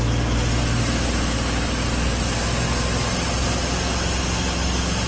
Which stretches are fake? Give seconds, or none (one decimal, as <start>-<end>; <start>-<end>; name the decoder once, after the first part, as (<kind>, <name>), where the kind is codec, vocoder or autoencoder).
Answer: none